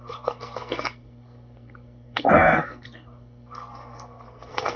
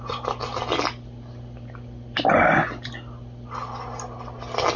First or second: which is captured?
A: second